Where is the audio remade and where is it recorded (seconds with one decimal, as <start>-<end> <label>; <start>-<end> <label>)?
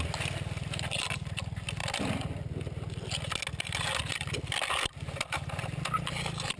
0.0-6.6 recorded